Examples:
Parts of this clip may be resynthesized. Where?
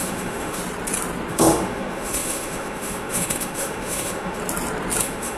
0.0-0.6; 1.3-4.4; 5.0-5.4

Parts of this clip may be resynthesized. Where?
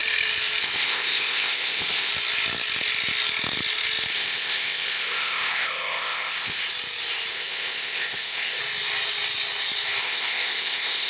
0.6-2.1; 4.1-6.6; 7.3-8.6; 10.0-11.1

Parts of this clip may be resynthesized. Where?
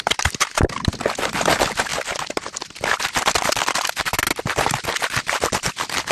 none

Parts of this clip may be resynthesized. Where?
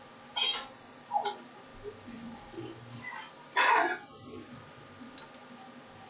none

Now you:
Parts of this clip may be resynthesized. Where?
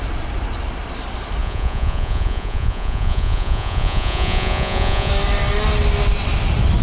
1.4-5.1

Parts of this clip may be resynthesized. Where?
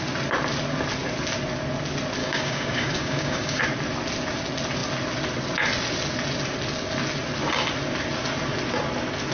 2.2-3.6